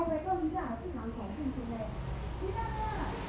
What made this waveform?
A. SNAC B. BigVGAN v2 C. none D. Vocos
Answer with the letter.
C